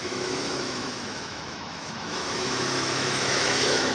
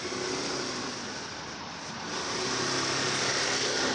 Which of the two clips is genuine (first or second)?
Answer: second